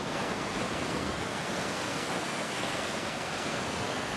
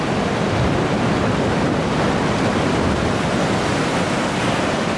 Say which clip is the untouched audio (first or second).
second